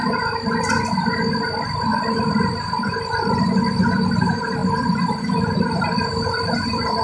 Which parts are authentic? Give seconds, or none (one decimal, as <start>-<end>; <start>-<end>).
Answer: 0.0-4.1